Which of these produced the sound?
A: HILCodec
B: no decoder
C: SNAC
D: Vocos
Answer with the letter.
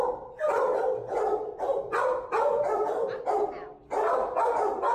B